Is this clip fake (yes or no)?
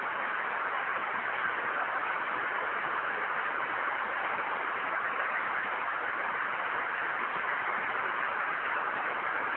no